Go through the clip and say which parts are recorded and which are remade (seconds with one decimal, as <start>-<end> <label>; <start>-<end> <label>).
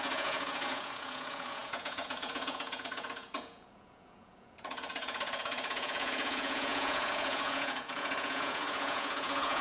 0.0-9.6 remade